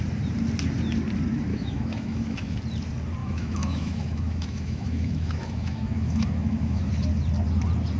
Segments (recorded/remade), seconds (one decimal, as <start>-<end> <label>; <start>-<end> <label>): 0.0-1.5 recorded; 1.5-2.6 remade; 2.6-3.2 recorded; 3.2-6.9 remade; 6.9-8.0 recorded